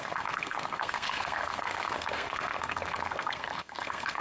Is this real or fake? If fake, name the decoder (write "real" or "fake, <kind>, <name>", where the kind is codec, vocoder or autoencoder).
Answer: fake, codec, SNAC